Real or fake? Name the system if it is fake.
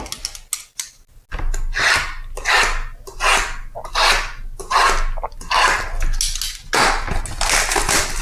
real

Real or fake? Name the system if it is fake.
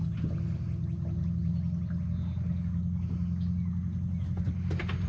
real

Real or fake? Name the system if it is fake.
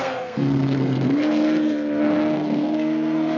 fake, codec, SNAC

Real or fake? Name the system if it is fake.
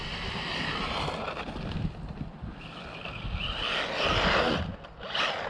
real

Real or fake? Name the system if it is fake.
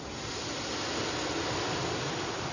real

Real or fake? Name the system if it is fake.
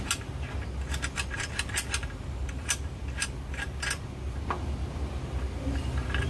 real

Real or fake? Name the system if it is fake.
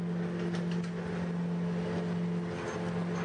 real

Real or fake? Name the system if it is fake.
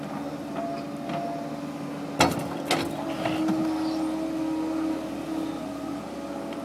real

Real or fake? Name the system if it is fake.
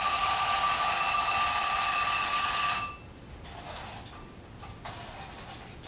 real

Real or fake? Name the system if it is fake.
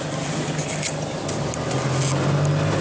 real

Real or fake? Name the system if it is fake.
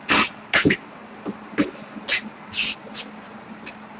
real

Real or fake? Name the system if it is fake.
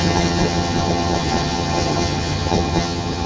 fake, vocoder, HiFi-GAN